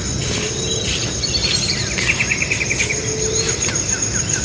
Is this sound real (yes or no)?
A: no